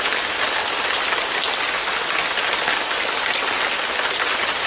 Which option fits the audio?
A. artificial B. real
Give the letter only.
B